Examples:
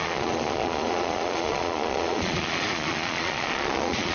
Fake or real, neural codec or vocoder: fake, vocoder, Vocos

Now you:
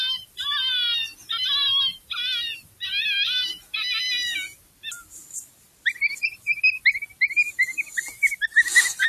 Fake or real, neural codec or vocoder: real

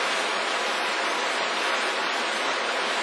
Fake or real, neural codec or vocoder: real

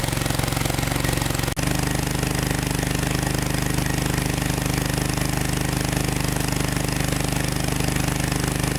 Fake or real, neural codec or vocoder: real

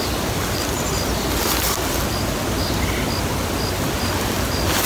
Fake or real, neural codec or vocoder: real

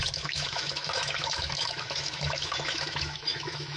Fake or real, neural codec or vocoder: fake, autoencoder, DAC-VAE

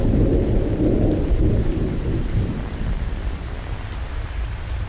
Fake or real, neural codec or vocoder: fake, vocoder, BigVGAN v2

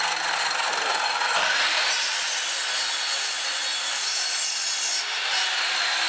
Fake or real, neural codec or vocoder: real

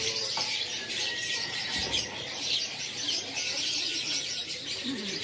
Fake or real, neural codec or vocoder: fake, vocoder, BigVGAN v2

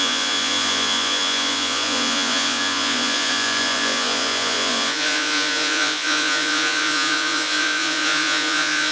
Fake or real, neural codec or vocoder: fake, vocoder, Vocos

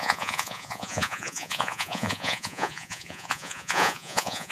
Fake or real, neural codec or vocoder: fake, vocoder, Vocos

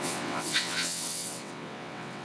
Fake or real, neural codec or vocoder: fake, vocoder, WaveNeXt